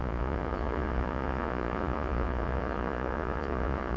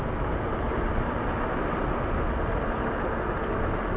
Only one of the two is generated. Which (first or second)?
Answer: first